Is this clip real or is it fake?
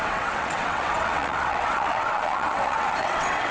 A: fake